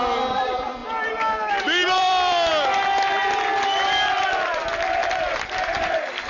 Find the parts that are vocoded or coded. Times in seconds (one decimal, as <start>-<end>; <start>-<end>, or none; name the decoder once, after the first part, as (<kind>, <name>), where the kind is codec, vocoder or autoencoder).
0.0-2.5 (vocoder, BigVGAN v2)